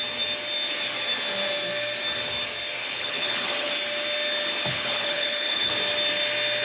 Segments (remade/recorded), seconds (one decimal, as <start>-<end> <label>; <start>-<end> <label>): 0.0-2.8 recorded; 2.8-3.7 remade; 3.7-4.7 recorded; 4.7-5.7 remade; 5.7-6.6 recorded